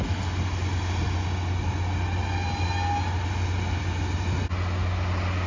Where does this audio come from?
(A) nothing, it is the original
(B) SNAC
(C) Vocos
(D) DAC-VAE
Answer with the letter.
A